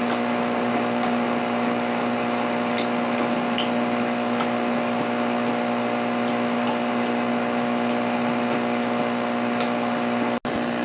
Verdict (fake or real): real